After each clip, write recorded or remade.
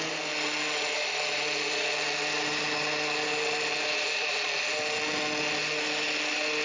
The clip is recorded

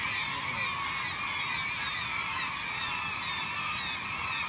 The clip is recorded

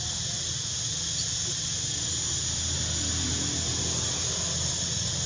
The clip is recorded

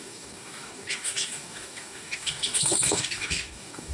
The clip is remade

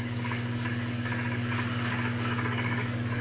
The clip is remade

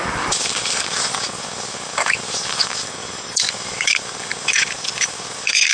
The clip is remade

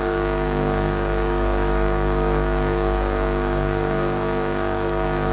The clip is remade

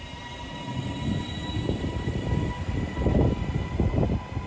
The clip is recorded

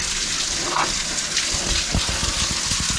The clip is recorded